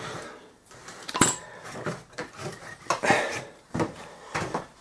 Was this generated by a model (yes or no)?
yes